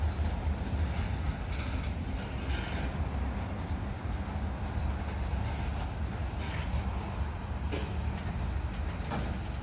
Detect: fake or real real